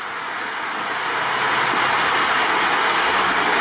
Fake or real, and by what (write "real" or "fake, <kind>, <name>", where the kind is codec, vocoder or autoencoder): real